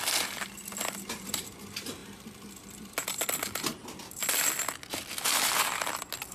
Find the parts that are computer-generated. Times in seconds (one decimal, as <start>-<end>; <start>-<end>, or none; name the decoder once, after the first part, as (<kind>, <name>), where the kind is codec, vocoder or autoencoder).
2.0-2.9 (vocoder, BigVGAN v2)